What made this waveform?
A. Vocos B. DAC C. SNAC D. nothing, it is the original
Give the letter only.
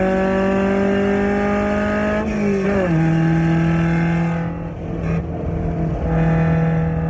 D